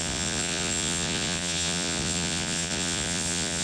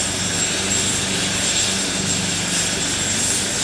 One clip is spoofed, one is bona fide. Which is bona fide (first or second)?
second